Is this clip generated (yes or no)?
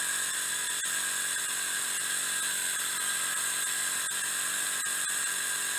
no